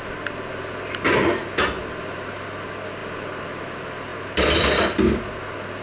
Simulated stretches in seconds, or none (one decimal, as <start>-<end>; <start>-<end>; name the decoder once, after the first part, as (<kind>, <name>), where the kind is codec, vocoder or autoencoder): none